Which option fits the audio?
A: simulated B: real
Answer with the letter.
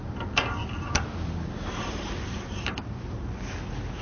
B